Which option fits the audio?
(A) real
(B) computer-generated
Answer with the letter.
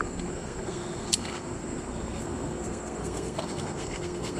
B